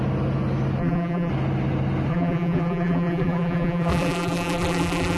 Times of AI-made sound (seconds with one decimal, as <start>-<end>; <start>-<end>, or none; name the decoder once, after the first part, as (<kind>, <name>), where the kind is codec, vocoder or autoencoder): 0.8-1.3 (vocoder, BigVGAN v2); 2.1-5.2